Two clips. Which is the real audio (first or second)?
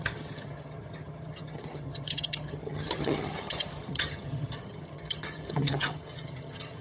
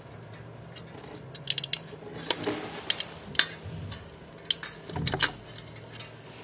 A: second